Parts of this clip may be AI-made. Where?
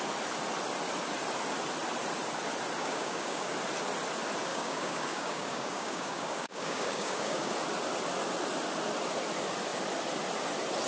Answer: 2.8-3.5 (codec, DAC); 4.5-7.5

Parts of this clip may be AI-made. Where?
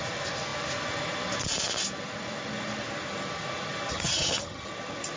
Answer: 3.9-4.7 (vocoder, HiFi-GAN)